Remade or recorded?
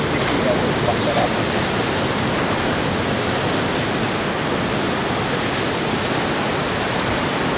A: recorded